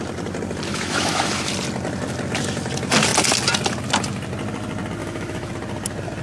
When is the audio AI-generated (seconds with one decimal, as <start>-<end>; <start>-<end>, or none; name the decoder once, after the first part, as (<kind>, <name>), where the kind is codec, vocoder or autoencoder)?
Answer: 0.7-1.5 (autoencoder, DAC-VAE); 5.0-5.5